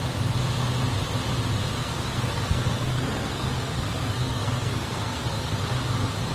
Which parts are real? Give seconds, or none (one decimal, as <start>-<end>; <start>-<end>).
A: 0.0-1.8; 5.6-6.3